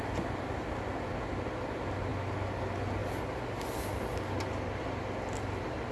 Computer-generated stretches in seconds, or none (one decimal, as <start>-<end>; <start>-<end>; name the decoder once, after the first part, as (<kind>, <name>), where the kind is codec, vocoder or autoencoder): none